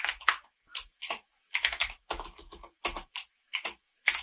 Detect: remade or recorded remade